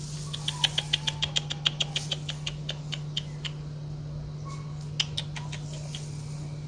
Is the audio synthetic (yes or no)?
no